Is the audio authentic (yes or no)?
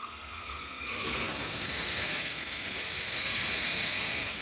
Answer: no